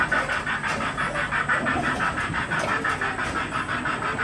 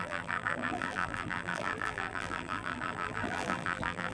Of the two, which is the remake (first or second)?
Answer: second